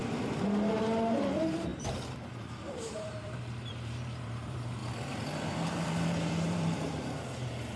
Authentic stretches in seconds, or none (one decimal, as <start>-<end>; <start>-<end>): 0.0-0.8; 4.8-5.5